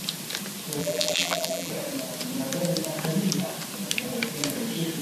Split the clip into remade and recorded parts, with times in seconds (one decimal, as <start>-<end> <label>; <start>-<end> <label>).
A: 0.0-0.8 recorded; 0.8-1.7 remade; 1.7-5.0 recorded